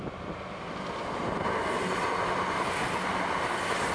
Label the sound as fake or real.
real